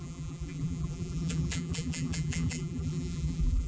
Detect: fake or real fake